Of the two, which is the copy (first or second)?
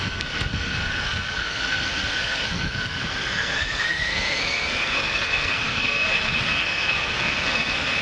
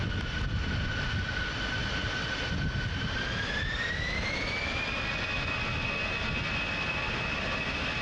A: first